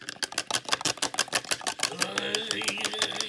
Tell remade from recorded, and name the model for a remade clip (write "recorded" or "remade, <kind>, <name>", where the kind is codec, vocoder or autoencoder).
recorded